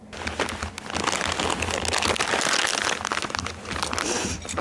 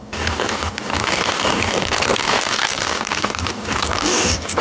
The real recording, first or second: first